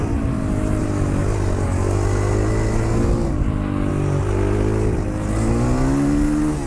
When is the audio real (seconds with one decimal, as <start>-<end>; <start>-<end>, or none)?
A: 0.0-6.7